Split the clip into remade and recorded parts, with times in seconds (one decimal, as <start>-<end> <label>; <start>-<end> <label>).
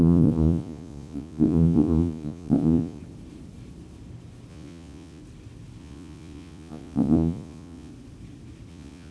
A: 0.0-3.0 remade; 3.0-4.5 recorded; 4.5-5.2 remade; 5.2-5.8 recorded; 5.8-7.9 remade; 7.9-8.7 recorded; 8.7-9.1 remade